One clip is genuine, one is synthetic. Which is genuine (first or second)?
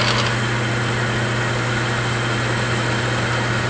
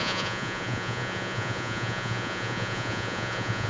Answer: first